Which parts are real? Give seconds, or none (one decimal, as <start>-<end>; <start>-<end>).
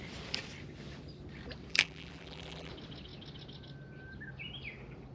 0.0-1.7; 2.7-5.1